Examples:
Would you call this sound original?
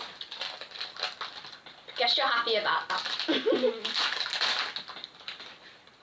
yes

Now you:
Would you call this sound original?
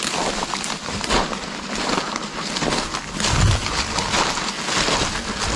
yes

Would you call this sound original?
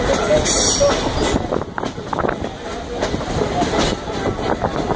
yes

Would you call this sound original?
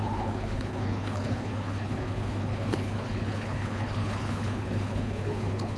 no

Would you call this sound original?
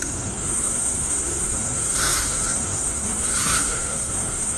no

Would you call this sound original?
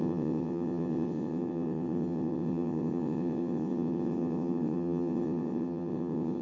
no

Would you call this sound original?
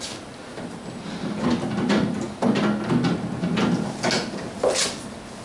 yes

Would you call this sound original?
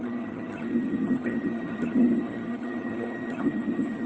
no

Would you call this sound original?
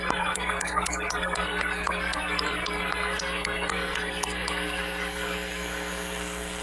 no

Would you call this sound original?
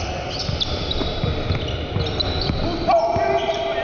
yes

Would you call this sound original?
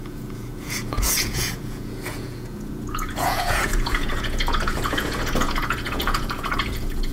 no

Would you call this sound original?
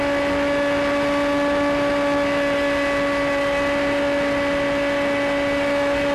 yes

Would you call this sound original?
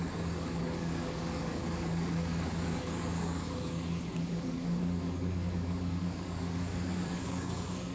no